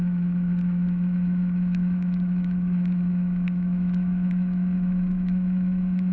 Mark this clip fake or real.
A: fake